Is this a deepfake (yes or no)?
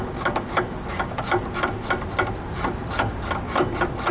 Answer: no